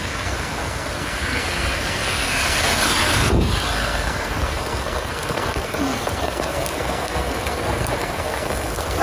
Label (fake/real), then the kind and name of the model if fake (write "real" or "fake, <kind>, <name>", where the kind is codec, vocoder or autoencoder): fake, codec, SNAC